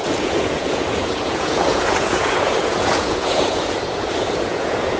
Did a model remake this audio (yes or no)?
yes